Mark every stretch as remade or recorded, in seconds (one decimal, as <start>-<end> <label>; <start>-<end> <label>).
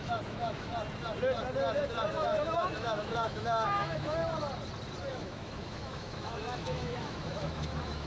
0.0-0.7 remade; 0.7-2.1 recorded; 2.1-4.2 remade; 4.2-5.1 recorded; 5.1-8.1 remade